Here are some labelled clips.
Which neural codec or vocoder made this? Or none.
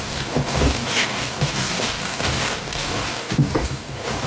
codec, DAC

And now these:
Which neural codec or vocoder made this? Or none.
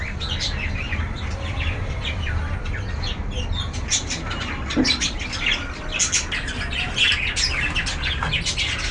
none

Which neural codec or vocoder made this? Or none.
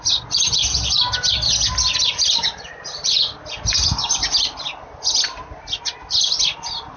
none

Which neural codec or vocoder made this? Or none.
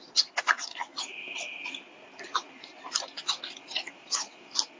none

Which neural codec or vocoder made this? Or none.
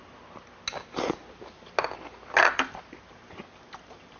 none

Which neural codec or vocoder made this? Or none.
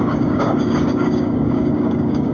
codec, DAC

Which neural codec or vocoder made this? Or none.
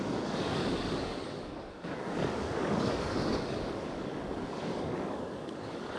codec, DAC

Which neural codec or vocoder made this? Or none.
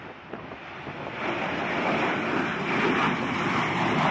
none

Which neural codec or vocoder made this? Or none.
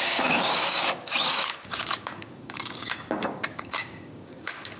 codec, DAC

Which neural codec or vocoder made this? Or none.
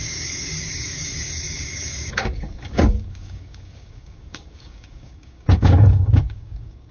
codec, DAC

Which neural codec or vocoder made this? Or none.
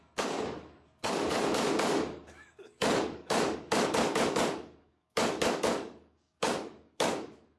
codec, DAC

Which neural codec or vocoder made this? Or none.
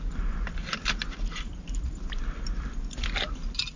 none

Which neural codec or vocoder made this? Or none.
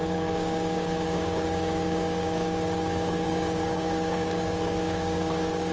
codec, DAC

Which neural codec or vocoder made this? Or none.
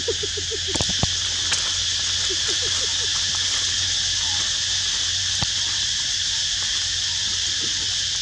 none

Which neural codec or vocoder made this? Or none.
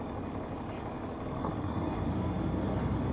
codec, DAC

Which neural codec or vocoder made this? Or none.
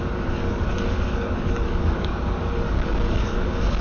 codec, DAC